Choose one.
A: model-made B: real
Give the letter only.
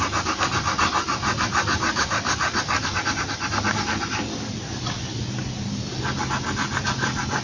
B